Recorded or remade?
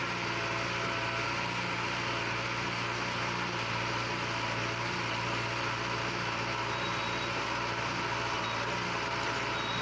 recorded